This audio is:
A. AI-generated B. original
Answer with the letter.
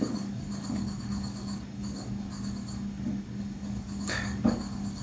A